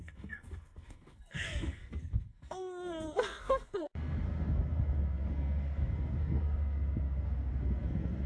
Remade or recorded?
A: remade